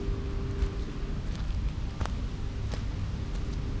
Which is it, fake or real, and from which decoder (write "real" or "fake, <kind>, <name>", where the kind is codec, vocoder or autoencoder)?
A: real